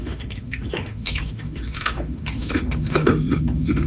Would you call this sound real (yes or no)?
no